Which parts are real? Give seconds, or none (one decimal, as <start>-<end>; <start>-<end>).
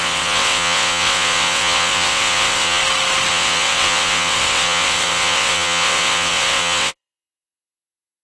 2.8-3.3